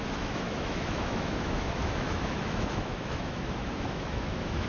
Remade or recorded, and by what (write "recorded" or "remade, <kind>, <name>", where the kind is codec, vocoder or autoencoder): remade, autoencoder, DAC-VAE